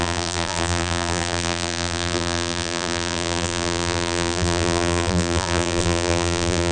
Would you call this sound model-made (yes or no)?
yes